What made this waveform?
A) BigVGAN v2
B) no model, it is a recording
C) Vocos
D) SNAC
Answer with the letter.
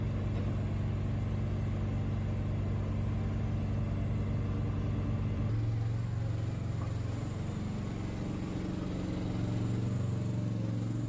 B